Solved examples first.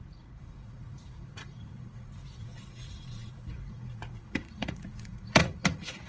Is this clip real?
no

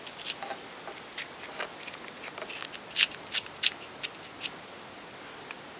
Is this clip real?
yes